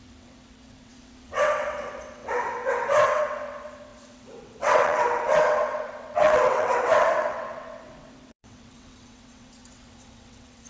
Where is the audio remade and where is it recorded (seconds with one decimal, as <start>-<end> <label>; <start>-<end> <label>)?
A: 0.0-10.7 remade